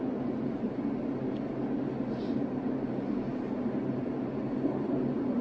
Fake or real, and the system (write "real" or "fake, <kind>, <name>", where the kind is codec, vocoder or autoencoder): real